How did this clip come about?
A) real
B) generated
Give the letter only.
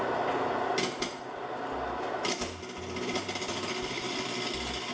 A